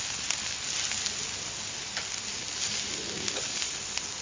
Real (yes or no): yes